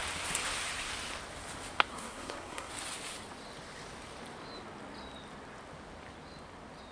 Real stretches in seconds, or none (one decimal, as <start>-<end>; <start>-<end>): 0.0-1.9; 2.7-6.9